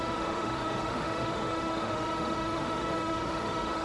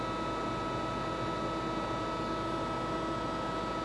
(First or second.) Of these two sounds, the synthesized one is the first